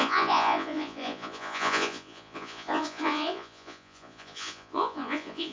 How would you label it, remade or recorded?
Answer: remade